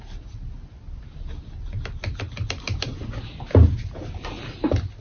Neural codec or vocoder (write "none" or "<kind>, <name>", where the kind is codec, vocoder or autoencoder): none